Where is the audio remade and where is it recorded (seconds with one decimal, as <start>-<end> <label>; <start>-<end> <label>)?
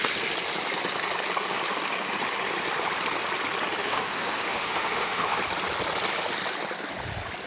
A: 0.0-3.8 recorded; 3.8-5.4 remade; 5.4-7.5 recorded